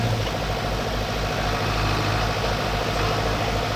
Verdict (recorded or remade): recorded